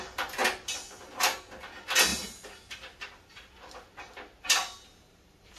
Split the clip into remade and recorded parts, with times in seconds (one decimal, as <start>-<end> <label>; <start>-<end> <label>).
0.0-5.6 recorded